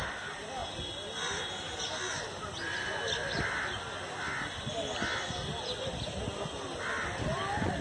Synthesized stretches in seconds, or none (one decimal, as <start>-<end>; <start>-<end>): none